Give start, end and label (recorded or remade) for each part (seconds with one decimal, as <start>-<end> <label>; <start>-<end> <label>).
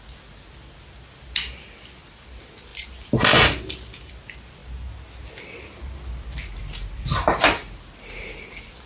0.0-8.9 recorded